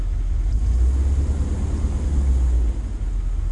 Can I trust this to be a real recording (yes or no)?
yes